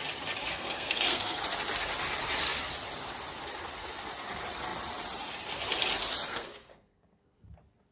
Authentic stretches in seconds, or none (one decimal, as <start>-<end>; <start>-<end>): 0.0-0.5; 1.4-6.3; 7.5-7.9